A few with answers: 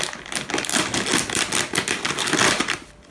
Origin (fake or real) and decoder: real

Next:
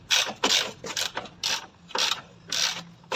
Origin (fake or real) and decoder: real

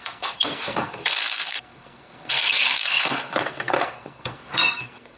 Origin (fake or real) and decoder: fake, codec, SNAC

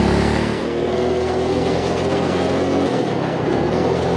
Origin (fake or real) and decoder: fake, codec, SNAC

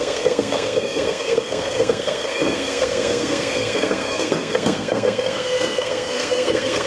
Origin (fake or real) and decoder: fake, codec, SNAC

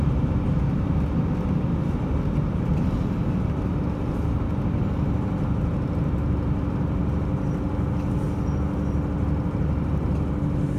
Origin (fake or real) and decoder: real